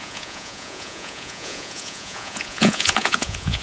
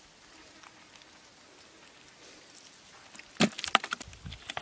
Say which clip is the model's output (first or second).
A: first